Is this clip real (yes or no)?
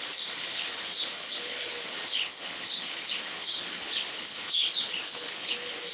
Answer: no